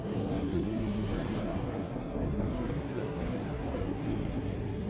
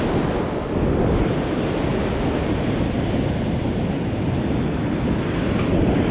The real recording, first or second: second